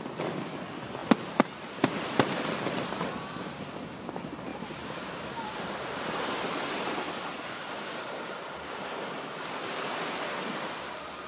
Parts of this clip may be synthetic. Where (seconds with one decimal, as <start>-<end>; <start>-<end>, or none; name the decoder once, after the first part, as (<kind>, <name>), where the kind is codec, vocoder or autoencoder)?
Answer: 0.0-1.0 (vocoder, BigVGAN v2); 1.6-4.5; 7.1-11.3